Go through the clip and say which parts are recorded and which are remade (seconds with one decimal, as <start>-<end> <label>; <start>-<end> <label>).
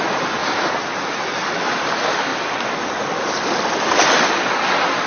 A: 0.0-0.4 recorded; 0.4-1.5 remade; 1.5-5.1 recorded